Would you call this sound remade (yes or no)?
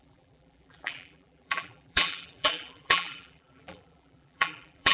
yes